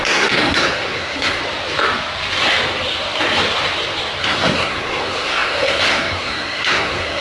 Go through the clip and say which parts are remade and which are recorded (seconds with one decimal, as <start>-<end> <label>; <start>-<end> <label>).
0.0-1.4 remade; 1.4-4.2 recorded; 4.2-7.2 remade